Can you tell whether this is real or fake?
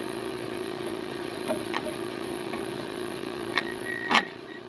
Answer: fake